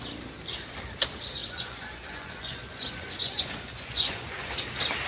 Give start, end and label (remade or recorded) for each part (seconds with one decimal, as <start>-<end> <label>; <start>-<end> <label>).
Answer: 0.0-1.4 recorded; 1.4-4.5 remade; 4.5-5.1 recorded